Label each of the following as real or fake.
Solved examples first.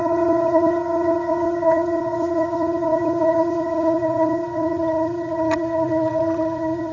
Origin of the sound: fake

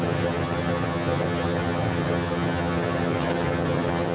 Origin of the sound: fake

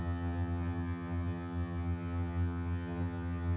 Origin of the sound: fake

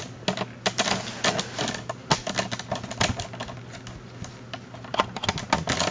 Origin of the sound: real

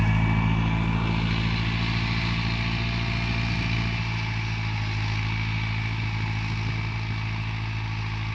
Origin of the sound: real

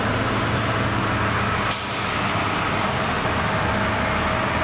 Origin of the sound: real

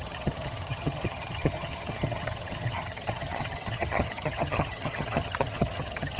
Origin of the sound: fake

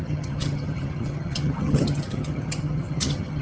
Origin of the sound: fake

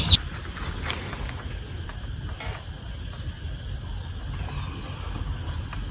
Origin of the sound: real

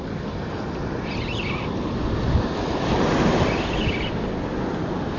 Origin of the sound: real